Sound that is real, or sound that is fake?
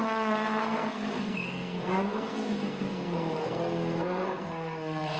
fake